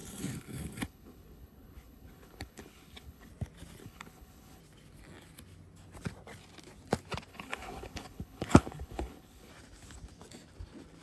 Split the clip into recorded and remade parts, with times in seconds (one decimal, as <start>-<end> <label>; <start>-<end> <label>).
0.0-3.3 remade; 3.3-3.8 recorded; 3.8-4.6 remade; 4.6-7.3 recorded; 7.3-9.5 remade; 9.5-11.0 recorded